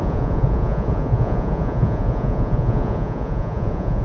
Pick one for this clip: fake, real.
fake